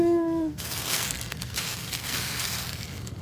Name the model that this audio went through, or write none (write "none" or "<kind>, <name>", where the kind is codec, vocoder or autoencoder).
codec, SNAC